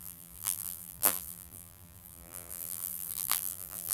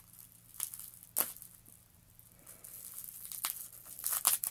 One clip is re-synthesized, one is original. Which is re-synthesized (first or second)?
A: first